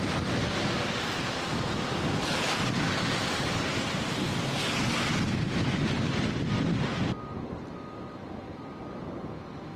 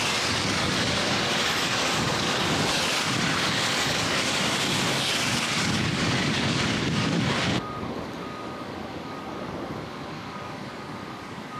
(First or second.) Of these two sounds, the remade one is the second